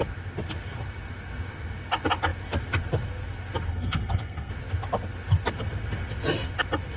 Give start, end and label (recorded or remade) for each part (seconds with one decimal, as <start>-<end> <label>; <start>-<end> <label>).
0.0-3.7 recorded; 3.7-4.5 remade; 4.5-7.0 recorded